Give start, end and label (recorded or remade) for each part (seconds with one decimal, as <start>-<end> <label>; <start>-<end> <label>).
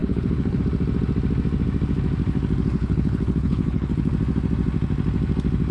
0.0-0.6 remade; 0.6-2.8 recorded; 2.8-4.1 remade; 4.1-5.7 recorded